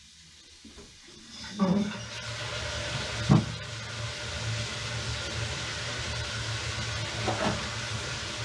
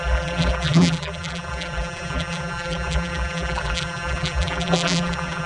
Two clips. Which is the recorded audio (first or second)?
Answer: first